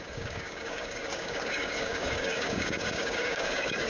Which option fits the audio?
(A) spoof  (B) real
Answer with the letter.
A